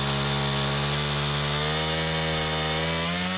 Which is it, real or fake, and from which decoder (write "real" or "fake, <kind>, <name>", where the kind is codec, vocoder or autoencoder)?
real